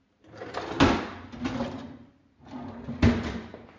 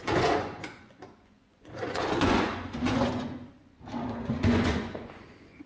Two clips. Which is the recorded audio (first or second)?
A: first